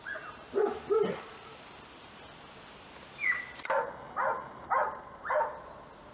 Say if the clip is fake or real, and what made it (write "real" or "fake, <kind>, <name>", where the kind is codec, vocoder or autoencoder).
real